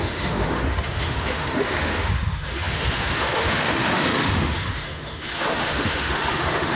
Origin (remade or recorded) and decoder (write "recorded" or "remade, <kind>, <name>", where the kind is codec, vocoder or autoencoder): remade, autoencoder, DAC-VAE